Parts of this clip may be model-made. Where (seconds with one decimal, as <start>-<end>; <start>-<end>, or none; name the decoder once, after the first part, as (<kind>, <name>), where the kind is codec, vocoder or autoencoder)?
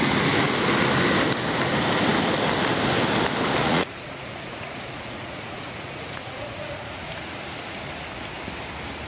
3.6-7.1 (vocoder, Vocos)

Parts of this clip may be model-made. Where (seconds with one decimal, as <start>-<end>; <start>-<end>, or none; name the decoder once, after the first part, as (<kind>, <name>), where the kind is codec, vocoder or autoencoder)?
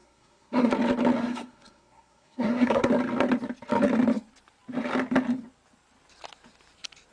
0.0-0.7 (codec, SNAC); 1.2-2.9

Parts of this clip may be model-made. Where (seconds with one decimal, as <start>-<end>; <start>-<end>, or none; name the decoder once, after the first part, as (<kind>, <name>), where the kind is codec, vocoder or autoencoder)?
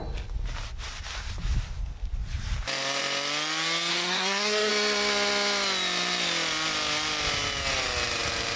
3.9-4.7 (codec, SNAC)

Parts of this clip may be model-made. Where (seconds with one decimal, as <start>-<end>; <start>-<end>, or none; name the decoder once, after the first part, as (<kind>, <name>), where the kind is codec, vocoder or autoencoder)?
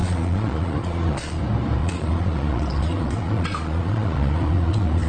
0.0-1.4 (vocoder, Vocos); 1.8-5.1